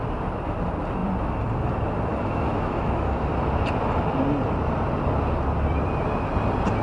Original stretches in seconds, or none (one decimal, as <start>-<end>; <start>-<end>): 0.0-2.1; 3.3-6.8